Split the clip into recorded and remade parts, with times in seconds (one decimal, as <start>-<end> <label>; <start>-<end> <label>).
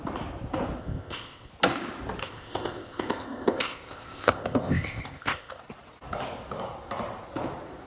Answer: 0.0-0.8 recorded; 0.8-1.5 remade; 1.5-2.2 recorded; 2.2-5.6 remade; 5.6-7.9 recorded